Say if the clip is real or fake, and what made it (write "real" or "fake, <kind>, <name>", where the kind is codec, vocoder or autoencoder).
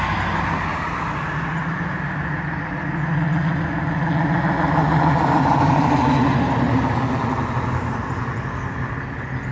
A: real